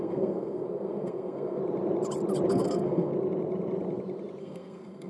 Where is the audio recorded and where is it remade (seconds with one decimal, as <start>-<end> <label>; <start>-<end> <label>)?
0.0-1.6 remade; 1.6-2.5 recorded; 2.5-3.1 remade; 3.1-4.4 recorded; 4.4-5.1 remade